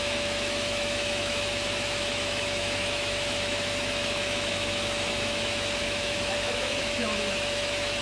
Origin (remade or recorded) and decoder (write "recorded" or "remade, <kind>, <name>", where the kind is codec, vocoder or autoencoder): remade, autoencoder, DAC-VAE